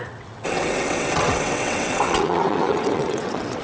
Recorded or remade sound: remade